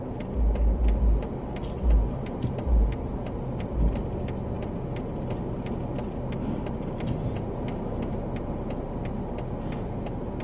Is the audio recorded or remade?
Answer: recorded